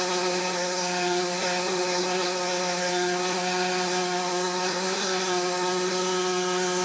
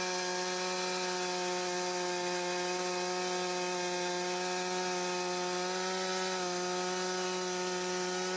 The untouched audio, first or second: second